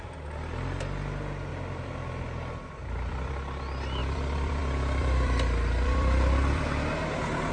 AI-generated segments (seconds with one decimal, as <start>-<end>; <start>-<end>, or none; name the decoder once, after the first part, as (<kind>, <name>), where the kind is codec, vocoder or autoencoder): 1.5-3.3 (vocoder, BigVGAN v2); 4.0-4.6; 5.0-7.5